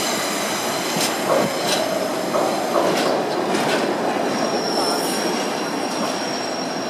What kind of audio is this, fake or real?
real